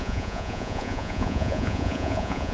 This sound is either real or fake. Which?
fake